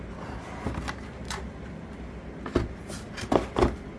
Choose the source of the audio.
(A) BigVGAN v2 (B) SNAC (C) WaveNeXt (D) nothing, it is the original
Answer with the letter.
D